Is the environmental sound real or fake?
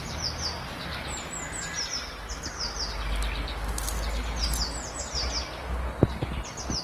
real